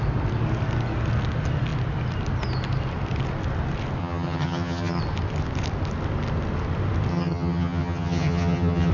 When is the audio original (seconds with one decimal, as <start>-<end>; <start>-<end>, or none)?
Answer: 0.0-4.0; 5.0-7.1